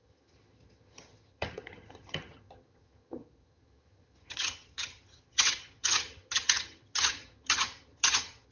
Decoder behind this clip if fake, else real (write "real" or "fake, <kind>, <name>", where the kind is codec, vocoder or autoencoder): fake, vocoder, HiFi-GAN